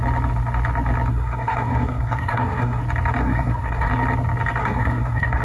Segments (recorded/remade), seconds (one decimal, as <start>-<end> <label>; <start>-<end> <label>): 0.0-1.1 recorded; 1.1-2.8 remade; 2.8-3.2 recorded; 3.2-3.9 remade; 3.9-4.6 recorded; 4.6-5.4 remade